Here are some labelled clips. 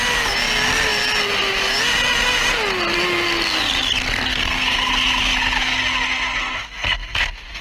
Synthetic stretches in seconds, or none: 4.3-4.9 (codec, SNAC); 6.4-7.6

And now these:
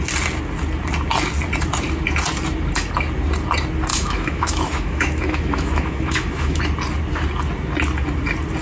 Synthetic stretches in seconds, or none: 3.9-6.6 (autoencoder, DAC-VAE)

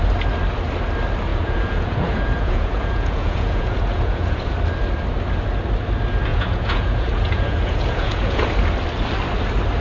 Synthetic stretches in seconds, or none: 1.3-4.5 (vocoder, Vocos); 6.3-8.5

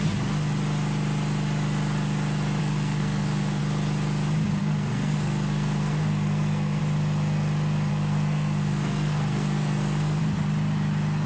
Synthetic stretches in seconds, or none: 2.6-3.6 (codec, SNAC); 4.6-6.8; 7.9-10.2

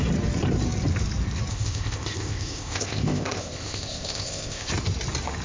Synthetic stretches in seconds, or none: 1.5-4.7 (codec, ZipCodec)